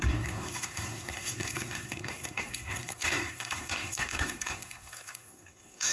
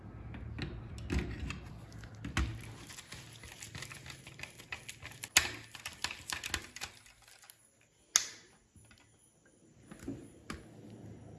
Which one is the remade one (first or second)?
first